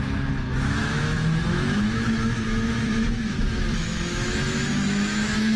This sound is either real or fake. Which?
fake